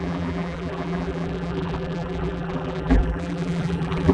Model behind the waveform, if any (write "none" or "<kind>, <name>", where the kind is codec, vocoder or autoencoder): vocoder, BigVGAN v2